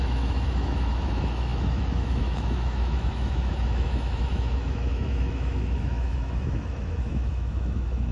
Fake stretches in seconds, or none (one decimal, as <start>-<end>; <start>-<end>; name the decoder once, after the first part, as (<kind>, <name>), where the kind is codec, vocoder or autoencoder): 0.0-8.1 (autoencoder, DAC-VAE)